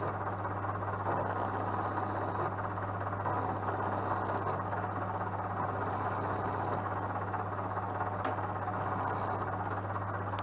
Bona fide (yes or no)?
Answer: yes